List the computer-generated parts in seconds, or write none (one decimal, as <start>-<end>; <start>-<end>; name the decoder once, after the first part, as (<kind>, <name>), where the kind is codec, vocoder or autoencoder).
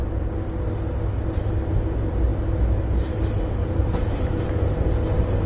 3.6-4.9 (vocoder, BigVGAN v2)